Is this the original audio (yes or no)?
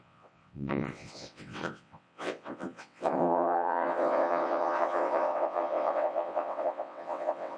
no